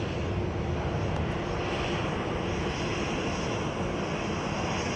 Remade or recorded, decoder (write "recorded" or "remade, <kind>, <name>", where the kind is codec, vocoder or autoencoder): recorded